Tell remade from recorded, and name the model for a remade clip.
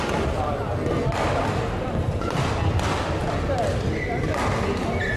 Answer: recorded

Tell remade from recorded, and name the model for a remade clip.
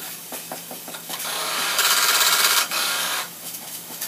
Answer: remade, codec, DAC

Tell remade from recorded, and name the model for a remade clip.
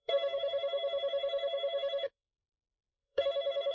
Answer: remade, codec, SNAC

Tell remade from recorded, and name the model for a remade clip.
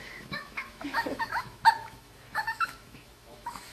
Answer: remade, autoencoder, DAC-VAE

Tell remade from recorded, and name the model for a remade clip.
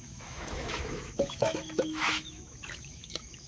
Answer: remade, autoencoder, DAC-VAE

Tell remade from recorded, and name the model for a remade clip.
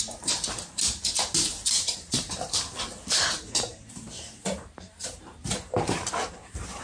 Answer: remade, vocoder, BigVGAN v2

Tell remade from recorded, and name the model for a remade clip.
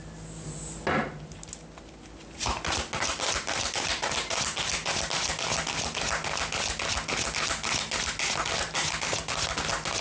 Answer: recorded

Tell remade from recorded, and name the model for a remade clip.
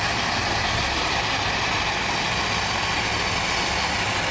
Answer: recorded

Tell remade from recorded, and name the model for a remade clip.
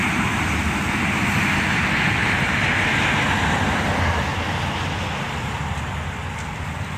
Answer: recorded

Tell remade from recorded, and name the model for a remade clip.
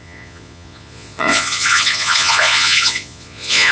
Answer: remade, vocoder, Vocos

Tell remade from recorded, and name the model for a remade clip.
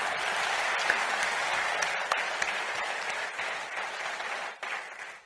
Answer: recorded